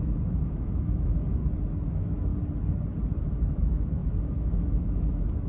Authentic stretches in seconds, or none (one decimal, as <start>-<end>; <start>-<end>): 1.4-1.9; 2.3-3.3